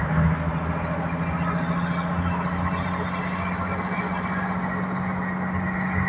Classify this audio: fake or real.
real